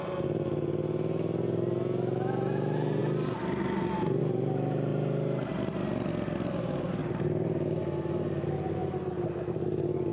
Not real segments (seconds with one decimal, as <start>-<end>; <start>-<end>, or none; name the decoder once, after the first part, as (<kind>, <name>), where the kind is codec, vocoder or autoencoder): none